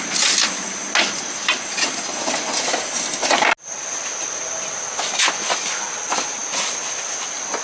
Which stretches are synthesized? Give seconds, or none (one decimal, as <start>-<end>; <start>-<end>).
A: none